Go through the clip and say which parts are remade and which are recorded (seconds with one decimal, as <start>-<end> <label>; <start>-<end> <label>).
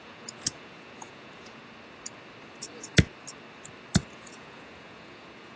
0.0-1.6 remade; 1.6-4.1 recorded; 4.1-5.6 remade